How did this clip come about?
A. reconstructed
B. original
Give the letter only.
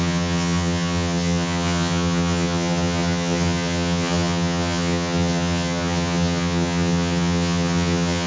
A